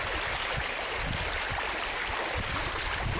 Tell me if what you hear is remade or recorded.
recorded